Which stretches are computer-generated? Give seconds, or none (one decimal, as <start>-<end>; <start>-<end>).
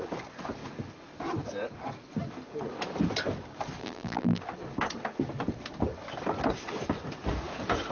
3.8-4.4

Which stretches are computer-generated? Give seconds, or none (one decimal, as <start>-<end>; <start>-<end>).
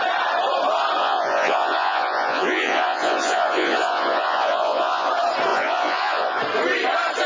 1.0-5.1; 5.5-6.4